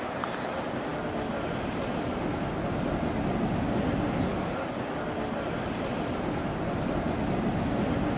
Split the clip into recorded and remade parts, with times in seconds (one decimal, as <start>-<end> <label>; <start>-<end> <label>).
0.0-8.2 recorded